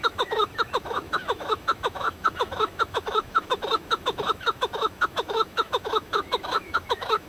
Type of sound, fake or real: fake